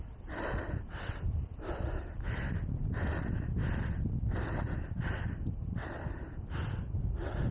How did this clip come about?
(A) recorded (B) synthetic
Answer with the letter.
A